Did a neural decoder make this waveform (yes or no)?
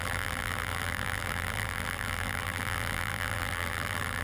yes